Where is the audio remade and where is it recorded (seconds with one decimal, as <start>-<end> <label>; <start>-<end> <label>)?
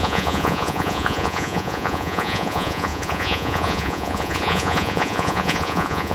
0.0-6.1 remade